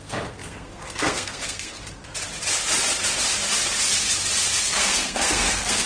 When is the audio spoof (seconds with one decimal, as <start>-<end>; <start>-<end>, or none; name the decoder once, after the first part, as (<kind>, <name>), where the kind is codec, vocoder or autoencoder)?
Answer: 0.0-1.8 (codec, SNAC); 4.6-5.9